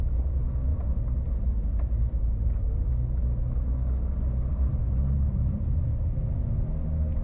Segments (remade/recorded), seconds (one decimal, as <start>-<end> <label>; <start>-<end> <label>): 0.0-0.7 recorded; 0.7-2.9 remade; 2.9-4.5 recorded; 4.5-5.8 remade; 5.8-7.2 recorded